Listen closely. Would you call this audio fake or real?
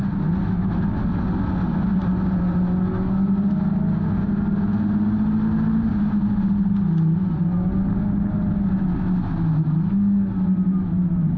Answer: real